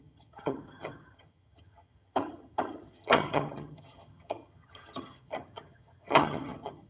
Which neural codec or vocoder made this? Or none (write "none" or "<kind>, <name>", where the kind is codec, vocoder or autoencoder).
vocoder, HiFi-GAN